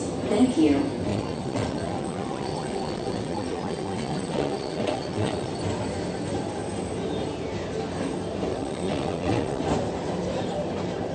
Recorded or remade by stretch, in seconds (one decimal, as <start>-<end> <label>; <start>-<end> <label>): 0.0-1.1 recorded; 1.1-5.5 remade; 5.5-8.5 recorded; 8.5-9.6 remade; 9.6-11.1 recorded